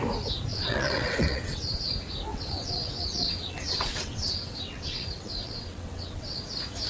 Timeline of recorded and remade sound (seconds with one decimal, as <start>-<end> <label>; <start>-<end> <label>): 0.0-0.5 recorded; 0.5-1.8 remade; 1.8-2.3 recorded; 2.3-6.4 remade; 6.4-6.9 recorded